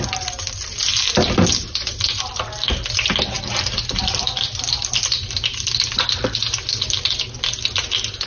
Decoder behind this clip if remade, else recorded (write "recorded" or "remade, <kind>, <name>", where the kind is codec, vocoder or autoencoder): recorded